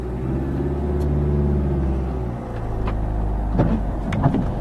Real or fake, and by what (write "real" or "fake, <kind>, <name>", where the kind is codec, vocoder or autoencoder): real